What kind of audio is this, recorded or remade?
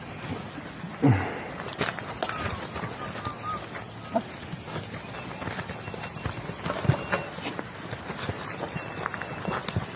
recorded